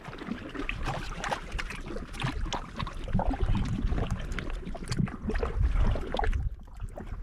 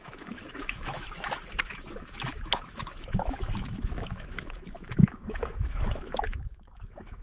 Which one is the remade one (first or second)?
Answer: second